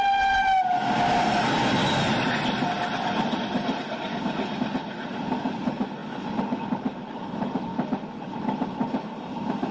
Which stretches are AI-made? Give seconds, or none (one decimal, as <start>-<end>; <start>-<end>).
none